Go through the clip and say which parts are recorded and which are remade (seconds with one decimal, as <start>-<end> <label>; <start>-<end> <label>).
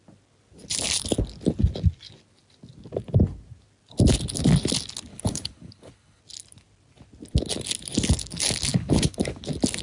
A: 0.0-5.1 recorded; 5.1-6.2 remade; 6.2-8.7 recorded; 8.7-9.4 remade; 9.4-9.8 recorded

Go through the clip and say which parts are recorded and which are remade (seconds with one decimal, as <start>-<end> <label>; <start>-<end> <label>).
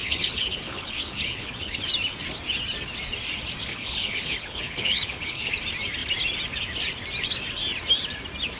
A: 0.0-1.8 remade; 1.8-3.7 recorded; 3.7-5.5 remade; 5.5-8.6 recorded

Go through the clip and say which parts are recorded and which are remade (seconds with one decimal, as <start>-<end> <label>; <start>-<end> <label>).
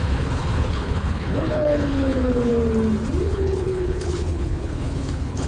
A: 0.0-2.5 remade; 2.5-3.2 recorded; 3.2-5.5 remade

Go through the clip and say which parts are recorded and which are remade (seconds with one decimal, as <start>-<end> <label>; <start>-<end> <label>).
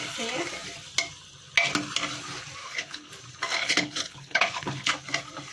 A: 0.0-2.6 recorded; 2.6-3.1 remade; 3.1-3.5 recorded; 3.5-4.9 remade; 4.9-5.5 recorded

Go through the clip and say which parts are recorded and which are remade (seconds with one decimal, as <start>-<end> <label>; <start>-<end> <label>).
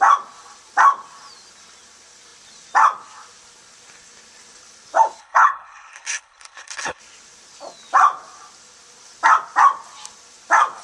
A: 0.0-5.2 recorded; 5.2-7.0 remade; 7.0-10.8 recorded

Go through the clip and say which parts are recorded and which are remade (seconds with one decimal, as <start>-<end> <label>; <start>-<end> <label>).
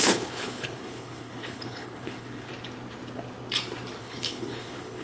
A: 0.0-2.5 remade; 2.5-4.0 recorded; 4.0-5.0 remade